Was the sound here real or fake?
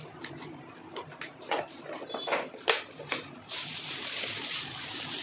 fake